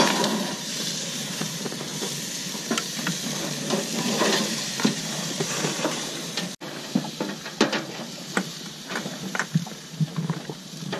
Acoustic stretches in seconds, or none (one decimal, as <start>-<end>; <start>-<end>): 1.9-4.5; 6.3-7.4